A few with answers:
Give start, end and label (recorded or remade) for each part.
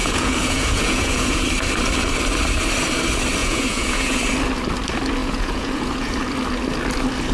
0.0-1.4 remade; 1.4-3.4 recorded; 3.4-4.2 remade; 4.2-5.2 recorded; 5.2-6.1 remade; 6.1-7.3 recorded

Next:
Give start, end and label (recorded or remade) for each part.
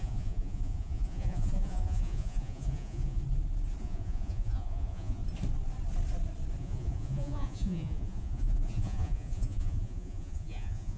0.0-3.2 remade; 3.2-3.8 recorded; 3.8-5.2 remade; 5.2-6.6 recorded; 6.6-11.0 remade